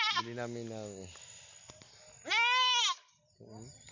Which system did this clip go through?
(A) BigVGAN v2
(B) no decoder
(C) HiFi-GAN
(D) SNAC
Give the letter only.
B